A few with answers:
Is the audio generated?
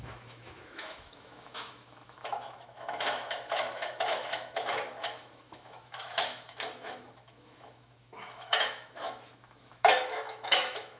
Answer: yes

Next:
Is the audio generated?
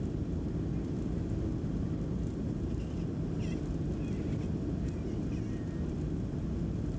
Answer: no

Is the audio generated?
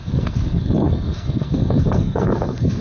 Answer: yes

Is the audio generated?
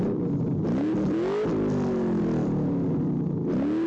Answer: no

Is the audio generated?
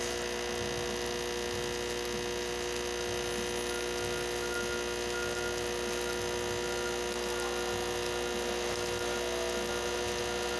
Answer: no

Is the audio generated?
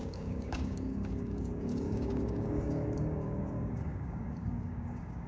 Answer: yes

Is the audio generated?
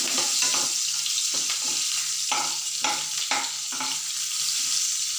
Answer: no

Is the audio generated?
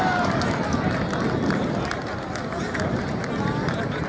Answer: no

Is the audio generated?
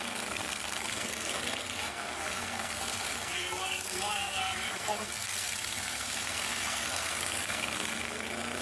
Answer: yes